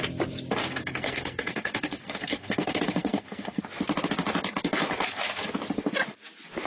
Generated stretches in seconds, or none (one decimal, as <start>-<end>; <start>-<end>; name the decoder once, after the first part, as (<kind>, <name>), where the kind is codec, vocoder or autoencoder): 0.6-3.6 (codec, SNAC)